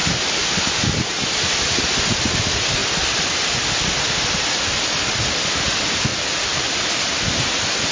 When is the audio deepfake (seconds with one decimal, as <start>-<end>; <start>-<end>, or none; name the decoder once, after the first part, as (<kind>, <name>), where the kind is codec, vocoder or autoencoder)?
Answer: 6.1-6.7 (vocoder, BigVGAN v2)